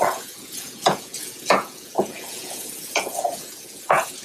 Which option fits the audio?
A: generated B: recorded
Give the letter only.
A